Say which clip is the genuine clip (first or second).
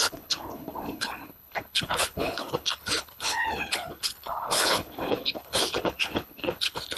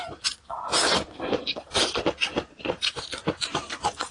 second